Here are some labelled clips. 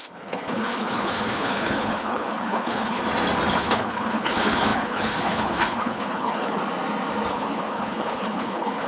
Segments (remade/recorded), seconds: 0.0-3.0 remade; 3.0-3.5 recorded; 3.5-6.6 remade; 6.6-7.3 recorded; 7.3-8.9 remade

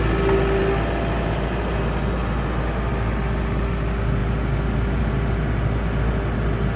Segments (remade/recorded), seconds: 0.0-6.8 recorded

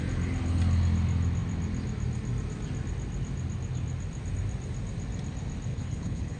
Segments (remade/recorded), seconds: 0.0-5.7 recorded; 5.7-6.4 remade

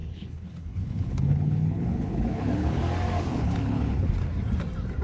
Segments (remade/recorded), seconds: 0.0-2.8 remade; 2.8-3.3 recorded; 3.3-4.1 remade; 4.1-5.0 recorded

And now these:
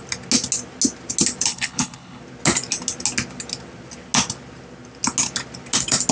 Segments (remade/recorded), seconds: 0.0-1.5 recorded; 1.5-2.2 remade; 2.2-6.1 recorded